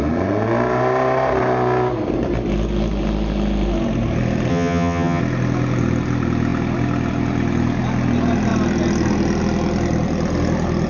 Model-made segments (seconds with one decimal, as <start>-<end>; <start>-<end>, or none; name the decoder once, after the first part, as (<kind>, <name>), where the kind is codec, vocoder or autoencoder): 4.5-5.2 (vocoder, HiFi-GAN)